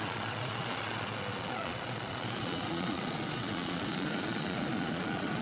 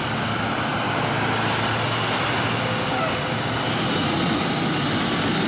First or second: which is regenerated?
first